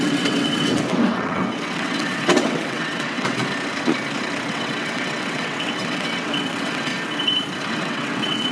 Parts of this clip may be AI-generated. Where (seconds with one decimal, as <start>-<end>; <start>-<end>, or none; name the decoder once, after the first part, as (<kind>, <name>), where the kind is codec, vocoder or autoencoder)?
0.0-3.4 (vocoder, WaveNeXt); 4.5-6.9; 7.7-8.5